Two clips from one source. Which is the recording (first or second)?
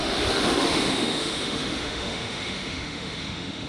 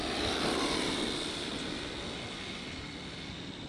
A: second